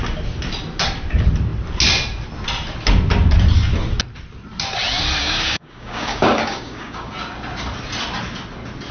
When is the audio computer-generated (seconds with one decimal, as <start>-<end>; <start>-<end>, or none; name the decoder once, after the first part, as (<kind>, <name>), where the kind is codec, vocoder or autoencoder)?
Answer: 5.2-7.1 (codec, DAC)